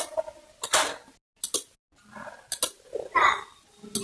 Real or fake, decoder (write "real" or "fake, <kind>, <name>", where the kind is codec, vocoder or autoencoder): real